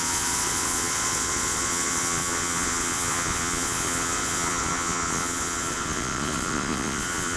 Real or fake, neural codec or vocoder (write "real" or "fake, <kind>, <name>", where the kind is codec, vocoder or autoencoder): fake, vocoder, Vocos